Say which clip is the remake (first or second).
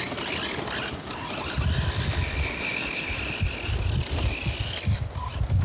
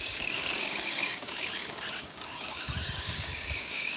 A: second